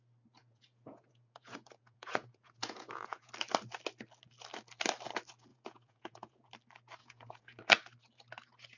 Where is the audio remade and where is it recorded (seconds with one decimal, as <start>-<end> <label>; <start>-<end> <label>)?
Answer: 0.0-0.4 recorded; 0.4-3.3 remade; 3.3-5.5 recorded; 5.5-6.5 remade; 6.5-7.0 recorded; 7.0-7.6 remade; 7.6-8.8 recorded